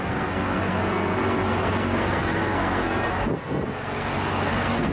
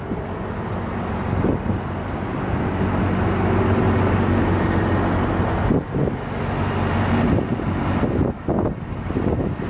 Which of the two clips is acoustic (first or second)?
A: second